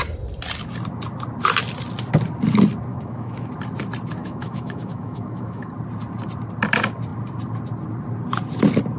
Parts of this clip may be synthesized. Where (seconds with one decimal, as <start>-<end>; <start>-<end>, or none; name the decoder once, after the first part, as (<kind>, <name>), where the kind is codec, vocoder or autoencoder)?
2.9-3.5 (autoencoder, DAC-VAE); 4.2-5.7